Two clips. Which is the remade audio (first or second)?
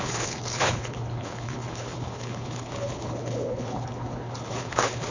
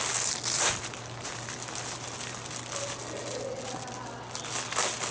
first